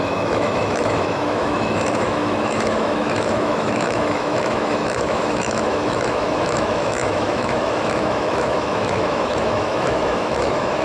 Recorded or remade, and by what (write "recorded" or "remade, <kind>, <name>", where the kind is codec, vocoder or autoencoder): remade, autoencoder, DAC-VAE